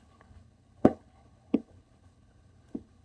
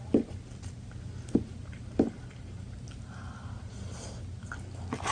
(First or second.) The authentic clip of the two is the second